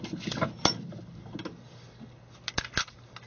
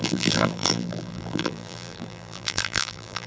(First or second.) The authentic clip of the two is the first